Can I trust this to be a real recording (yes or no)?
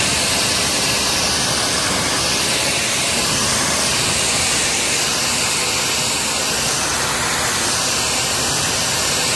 yes